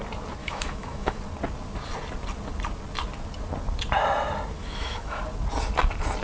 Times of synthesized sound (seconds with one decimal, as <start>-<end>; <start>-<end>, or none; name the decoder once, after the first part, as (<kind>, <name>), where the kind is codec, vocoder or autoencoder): 0.4-1.2 (autoencoder, DAC-VAE); 4.6-5.2